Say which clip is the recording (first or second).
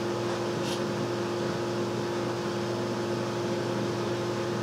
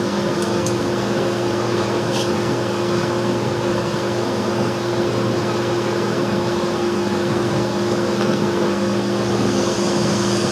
first